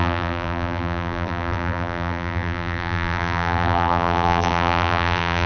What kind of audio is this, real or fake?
fake